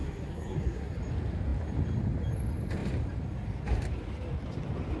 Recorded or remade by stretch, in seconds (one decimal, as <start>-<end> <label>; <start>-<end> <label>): 0.0-1.0 remade; 1.0-5.0 recorded